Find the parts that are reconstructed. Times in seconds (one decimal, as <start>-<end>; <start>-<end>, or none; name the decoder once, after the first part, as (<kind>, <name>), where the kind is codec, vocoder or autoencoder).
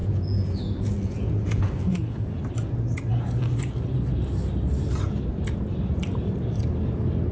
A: 0.0-2.4 (vocoder, Vocos)